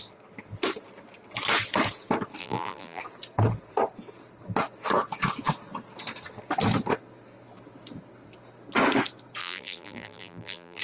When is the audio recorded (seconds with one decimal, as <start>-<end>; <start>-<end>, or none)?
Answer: 0.0-2.4; 3.0-9.4